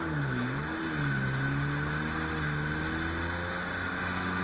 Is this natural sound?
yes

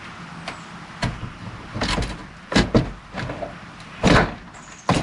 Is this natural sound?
yes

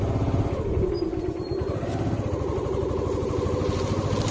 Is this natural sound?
yes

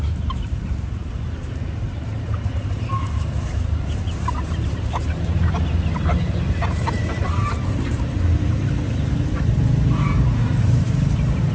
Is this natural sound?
no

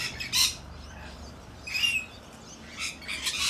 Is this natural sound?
yes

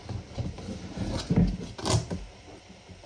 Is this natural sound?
yes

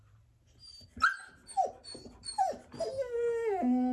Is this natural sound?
yes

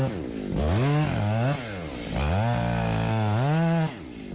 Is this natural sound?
yes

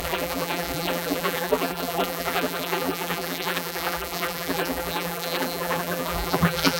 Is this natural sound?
no